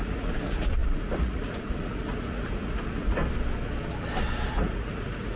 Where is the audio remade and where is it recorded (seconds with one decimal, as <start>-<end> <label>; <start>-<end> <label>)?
0.0-3.2 remade; 3.2-4.5 recorded; 4.5-5.4 remade